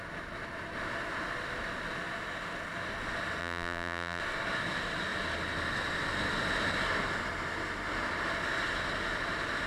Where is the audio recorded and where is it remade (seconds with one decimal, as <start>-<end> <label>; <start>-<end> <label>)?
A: 0.0-3.4 recorded; 3.4-4.2 remade; 4.2-9.7 recorded